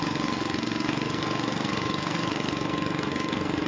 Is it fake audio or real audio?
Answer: fake